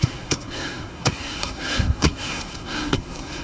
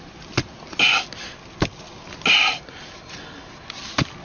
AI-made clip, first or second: first